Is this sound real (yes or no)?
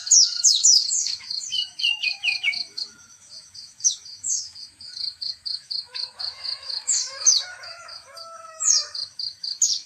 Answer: no